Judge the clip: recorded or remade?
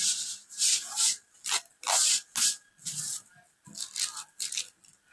recorded